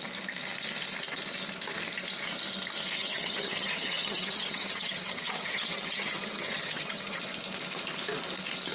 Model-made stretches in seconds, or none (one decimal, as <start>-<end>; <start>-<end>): 3.0-7.2

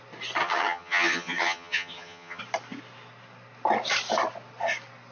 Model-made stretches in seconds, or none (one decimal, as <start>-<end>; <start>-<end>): 0.4-2.4

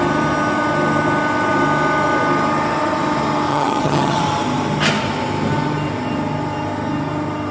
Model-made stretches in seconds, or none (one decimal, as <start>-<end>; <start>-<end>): 3.5-4.2

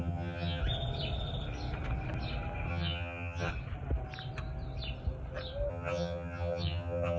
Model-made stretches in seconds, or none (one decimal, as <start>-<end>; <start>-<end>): 0.0-0.6; 2.7-3.5; 5.7-7.2

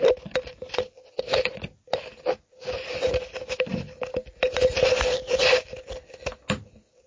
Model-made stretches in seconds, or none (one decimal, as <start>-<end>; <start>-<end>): none

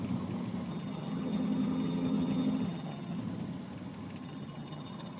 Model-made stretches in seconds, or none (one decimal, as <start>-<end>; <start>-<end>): 0.7-3.2; 4.2-5.2